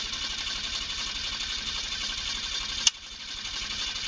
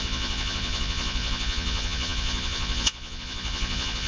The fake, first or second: second